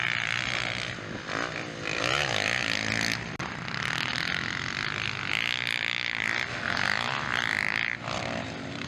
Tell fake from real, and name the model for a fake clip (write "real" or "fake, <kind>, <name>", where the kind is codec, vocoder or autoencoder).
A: real